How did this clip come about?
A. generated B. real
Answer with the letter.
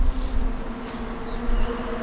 B